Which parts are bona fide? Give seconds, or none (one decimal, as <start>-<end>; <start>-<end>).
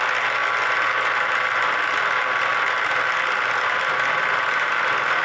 0.0-5.2